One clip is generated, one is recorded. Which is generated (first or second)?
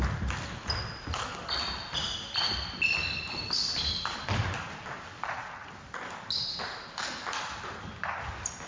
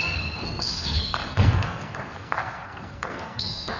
second